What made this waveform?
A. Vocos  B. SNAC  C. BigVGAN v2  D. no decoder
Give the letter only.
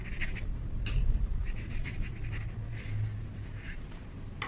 D